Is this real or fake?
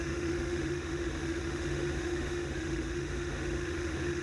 fake